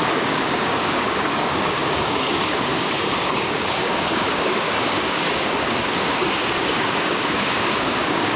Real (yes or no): no